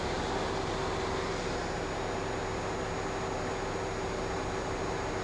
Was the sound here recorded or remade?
recorded